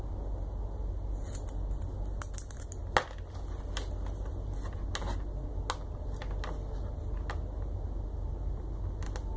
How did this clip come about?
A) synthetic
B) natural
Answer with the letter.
B